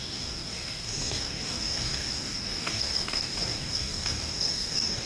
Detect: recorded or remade remade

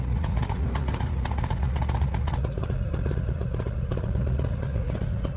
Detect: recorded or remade remade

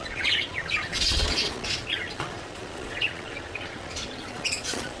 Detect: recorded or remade remade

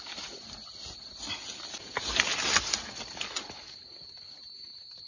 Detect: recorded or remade recorded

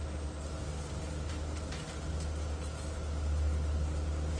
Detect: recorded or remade recorded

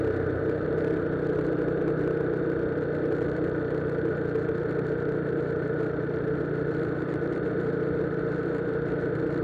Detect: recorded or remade recorded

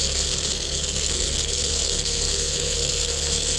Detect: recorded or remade remade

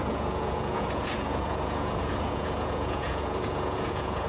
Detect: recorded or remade remade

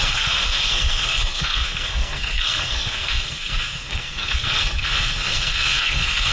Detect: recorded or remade remade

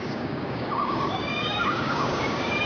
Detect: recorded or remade remade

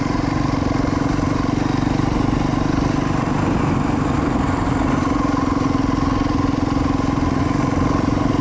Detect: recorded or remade recorded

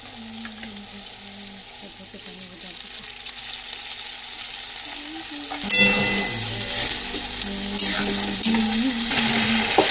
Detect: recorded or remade recorded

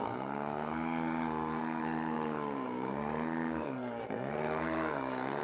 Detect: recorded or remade remade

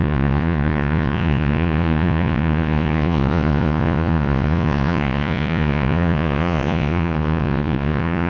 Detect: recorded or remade remade